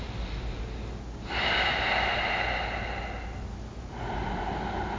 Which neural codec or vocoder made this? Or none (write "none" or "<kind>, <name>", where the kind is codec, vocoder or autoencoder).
none